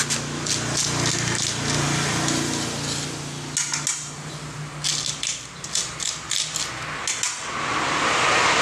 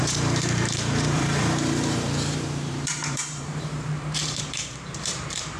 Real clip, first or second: first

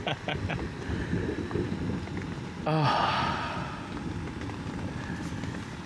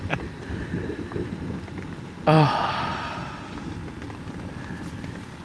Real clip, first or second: first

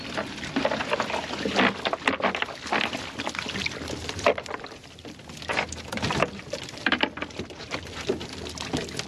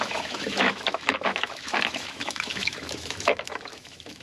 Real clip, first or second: first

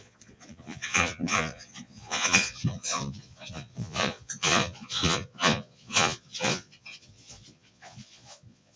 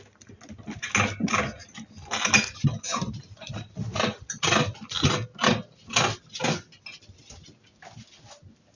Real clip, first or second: second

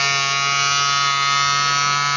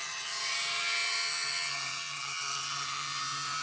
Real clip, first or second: first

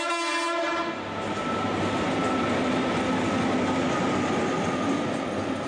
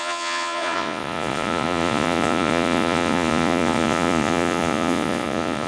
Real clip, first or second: first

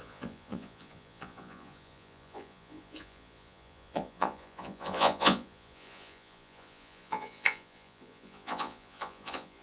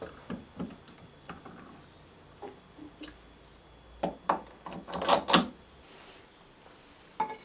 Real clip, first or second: second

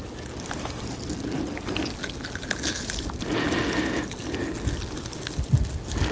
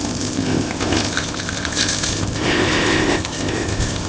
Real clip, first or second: first